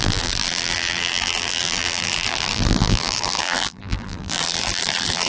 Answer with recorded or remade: remade